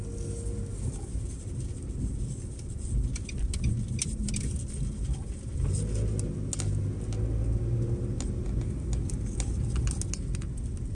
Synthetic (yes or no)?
no